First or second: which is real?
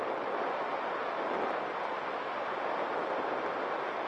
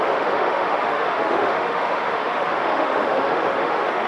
first